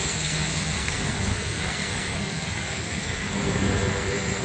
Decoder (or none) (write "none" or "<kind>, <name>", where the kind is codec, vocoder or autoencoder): codec, SNAC